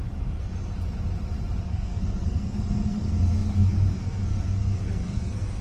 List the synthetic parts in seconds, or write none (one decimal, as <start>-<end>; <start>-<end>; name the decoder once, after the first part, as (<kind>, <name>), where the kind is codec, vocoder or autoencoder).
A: 0.0-0.5 (codec, SNAC); 1.6-5.6